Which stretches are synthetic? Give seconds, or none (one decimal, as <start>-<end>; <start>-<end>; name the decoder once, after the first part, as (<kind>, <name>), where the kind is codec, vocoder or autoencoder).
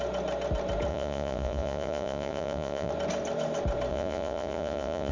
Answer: 0.9-2.9 (vocoder, Vocos); 3.9-5.1